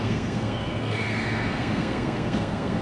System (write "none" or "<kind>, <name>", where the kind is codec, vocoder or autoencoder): codec, SNAC